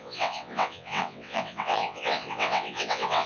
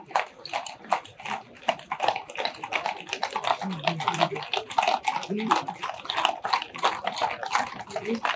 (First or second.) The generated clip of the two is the first